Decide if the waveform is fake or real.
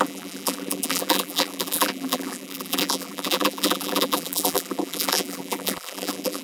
fake